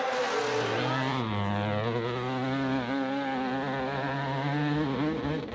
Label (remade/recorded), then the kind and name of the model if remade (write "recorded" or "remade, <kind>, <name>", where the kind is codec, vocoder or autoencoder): recorded